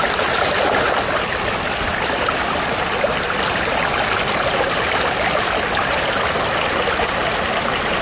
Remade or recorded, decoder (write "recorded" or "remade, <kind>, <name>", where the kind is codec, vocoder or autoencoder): recorded